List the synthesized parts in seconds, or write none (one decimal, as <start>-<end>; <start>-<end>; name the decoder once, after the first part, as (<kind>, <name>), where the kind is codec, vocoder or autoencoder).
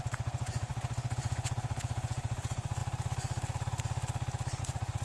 0.0-2.8 (vocoder, Vocos); 4.6-5.0